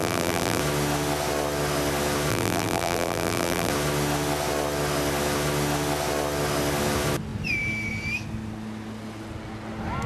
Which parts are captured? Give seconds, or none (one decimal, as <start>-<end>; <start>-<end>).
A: 0.6-2.3; 3.7-10.1